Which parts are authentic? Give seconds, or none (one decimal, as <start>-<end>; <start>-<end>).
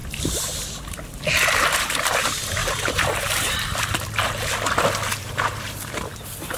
0.0-2.6; 4.5-5.2; 5.9-6.6